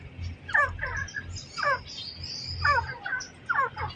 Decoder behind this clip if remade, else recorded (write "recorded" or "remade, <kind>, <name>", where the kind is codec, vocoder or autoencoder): recorded